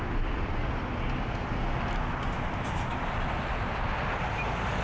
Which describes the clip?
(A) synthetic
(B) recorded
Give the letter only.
B